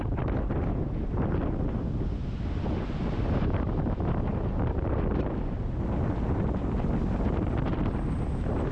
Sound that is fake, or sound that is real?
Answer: real